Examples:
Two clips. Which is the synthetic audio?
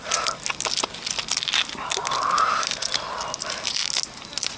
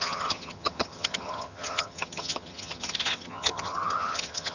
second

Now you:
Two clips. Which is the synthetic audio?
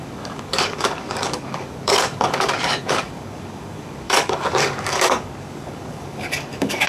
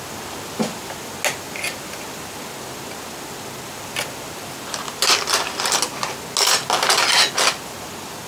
first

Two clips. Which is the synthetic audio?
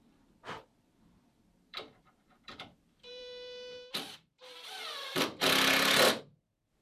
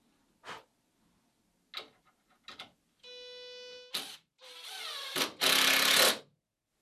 first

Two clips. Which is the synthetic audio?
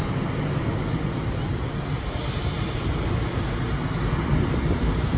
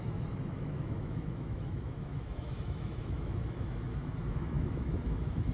second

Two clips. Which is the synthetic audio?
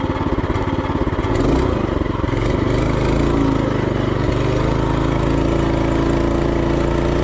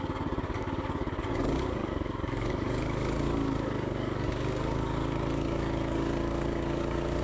second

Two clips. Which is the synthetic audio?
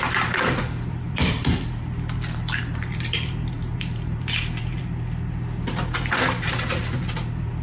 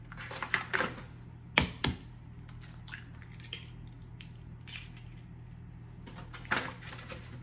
first